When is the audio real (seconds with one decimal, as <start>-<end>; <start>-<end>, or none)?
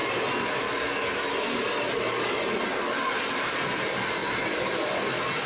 0.0-5.5